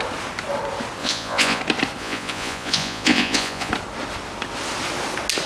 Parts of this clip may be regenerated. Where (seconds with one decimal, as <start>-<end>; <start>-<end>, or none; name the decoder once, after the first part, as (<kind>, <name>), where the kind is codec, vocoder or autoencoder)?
1.0-1.6 (vocoder, Vocos); 2.0-3.7